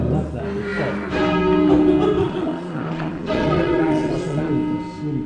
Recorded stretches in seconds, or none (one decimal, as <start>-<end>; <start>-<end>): 0.0-2.2; 4.5-5.3